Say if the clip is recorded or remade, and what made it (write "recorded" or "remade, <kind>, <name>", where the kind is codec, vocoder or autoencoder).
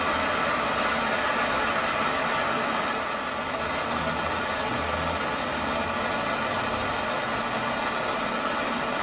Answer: recorded